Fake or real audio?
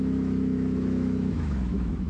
fake